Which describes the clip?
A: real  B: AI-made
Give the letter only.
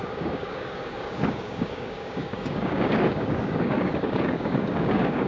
B